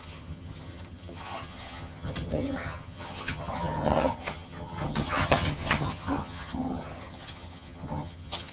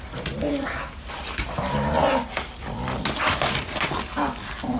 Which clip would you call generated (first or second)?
first